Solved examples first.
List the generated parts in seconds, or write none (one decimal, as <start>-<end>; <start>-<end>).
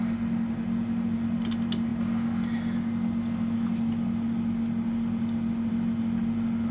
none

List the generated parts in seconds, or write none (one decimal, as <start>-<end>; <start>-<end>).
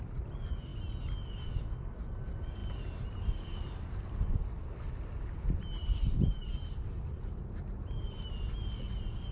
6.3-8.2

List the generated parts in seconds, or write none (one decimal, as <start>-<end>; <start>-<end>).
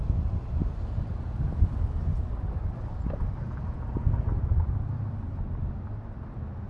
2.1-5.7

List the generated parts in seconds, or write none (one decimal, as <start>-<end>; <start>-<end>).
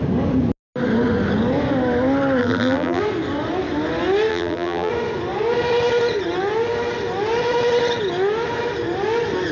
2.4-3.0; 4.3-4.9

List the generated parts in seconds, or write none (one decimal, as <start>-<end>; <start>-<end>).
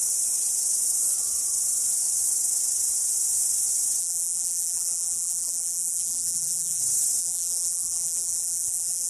4.0-6.8; 7.2-9.1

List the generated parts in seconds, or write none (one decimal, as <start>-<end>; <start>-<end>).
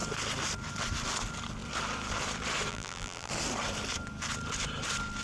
2.7-3.3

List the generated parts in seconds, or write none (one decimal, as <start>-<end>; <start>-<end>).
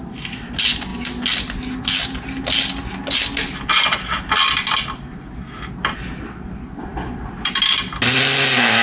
6.9-8.0